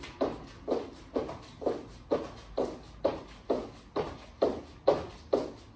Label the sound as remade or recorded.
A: recorded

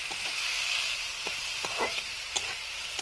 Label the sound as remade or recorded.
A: recorded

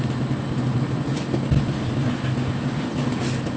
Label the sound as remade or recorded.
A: recorded